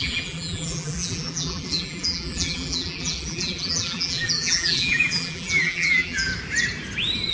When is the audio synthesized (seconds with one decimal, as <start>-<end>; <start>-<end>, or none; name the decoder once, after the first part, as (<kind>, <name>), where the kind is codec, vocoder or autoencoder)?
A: 0.0-6.3 (vocoder, BigVGAN v2)